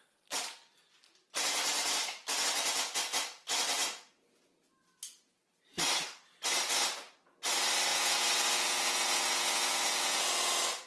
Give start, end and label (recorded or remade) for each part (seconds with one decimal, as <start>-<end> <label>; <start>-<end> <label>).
0.0-7.9 recorded; 7.9-10.5 remade; 10.5-10.9 recorded

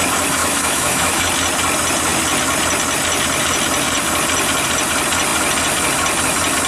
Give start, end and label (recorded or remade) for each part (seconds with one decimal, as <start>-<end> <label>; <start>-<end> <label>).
0.0-0.4 recorded; 0.4-1.3 remade; 1.3-6.7 recorded

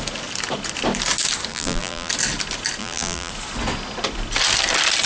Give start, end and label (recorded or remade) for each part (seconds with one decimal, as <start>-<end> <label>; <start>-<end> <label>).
0.0-1.5 recorded; 1.5-2.1 remade; 2.1-2.8 recorded; 2.8-3.3 remade; 3.3-5.1 recorded

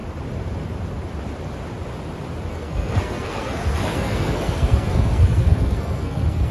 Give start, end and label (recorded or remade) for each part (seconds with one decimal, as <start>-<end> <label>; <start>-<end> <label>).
0.0-2.5 recorded; 2.5-6.5 remade

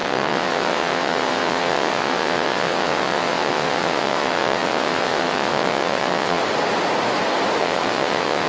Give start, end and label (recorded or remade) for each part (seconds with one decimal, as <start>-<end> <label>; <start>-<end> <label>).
0.0-6.4 remade; 6.4-7.6 recorded; 7.6-8.5 remade

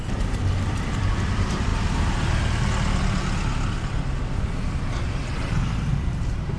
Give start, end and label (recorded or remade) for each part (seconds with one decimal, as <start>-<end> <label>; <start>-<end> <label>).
0.0-1.7 remade; 1.7-4.0 recorded; 4.0-6.6 remade

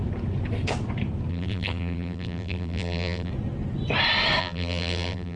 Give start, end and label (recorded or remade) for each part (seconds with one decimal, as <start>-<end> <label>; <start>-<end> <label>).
0.0-1.3 recorded; 1.3-3.3 remade; 3.3-4.4 recorded; 4.4-5.4 remade

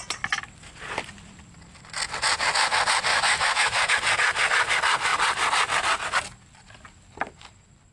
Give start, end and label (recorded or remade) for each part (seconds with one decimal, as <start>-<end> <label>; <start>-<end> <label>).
0.0-3.1 recorded; 3.1-3.9 remade; 3.9-7.9 recorded